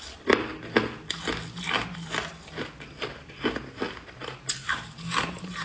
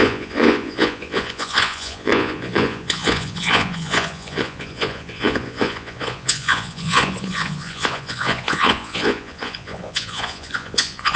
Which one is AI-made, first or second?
second